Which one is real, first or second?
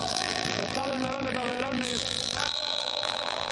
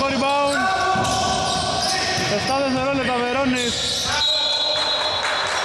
second